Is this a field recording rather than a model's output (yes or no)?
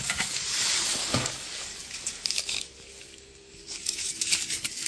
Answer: no